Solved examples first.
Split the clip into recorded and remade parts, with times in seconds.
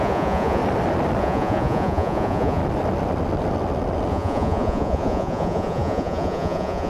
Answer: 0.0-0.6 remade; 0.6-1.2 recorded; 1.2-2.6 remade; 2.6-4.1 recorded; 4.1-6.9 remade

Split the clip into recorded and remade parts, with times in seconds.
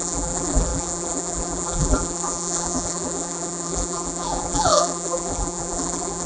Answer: 0.0-6.3 remade